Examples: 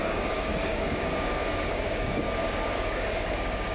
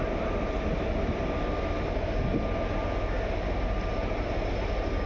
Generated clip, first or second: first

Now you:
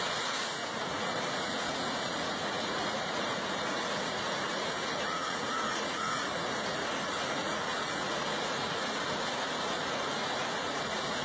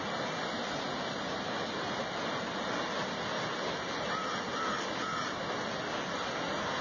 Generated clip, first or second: first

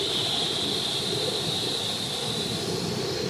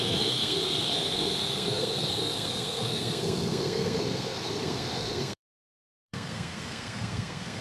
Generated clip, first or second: second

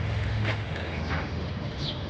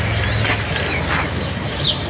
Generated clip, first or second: first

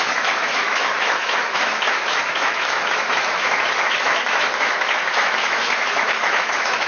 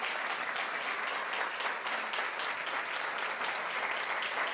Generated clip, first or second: first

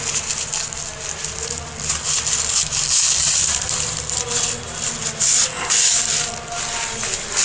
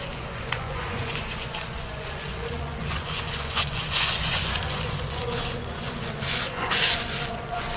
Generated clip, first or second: second